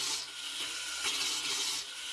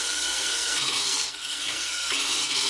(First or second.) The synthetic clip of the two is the second